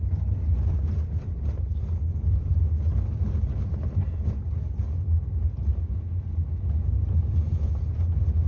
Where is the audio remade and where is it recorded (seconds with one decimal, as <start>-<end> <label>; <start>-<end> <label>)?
0.0-8.5 recorded